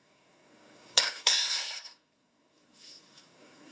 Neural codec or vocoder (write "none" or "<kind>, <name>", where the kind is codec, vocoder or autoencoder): codec, SNAC